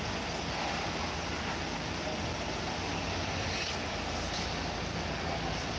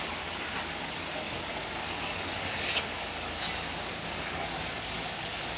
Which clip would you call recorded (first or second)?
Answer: first